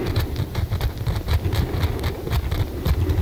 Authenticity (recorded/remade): recorded